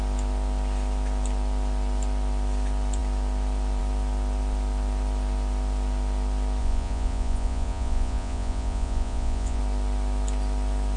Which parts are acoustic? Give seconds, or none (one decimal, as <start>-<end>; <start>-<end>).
0.0-6.6; 9.6-11.0